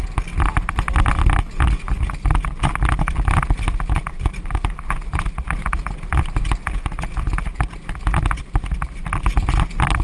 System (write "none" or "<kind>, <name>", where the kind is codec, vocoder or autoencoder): none